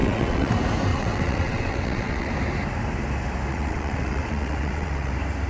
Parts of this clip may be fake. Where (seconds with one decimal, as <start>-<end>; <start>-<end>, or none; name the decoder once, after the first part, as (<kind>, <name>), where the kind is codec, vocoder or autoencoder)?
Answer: 0.0-0.5 (vocoder, WaveNeXt); 0.9-2.3; 3.5-5.1